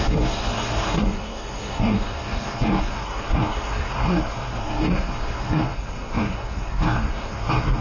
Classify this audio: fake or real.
fake